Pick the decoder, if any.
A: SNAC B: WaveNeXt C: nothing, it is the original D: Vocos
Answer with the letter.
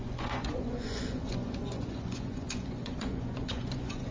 D